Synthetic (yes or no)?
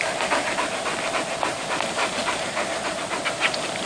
no